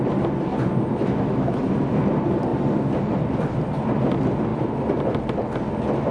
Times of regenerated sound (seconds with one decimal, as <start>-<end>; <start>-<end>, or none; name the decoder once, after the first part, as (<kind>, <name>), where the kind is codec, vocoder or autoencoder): 0.9-1.6 (autoencoder, DAC-VAE)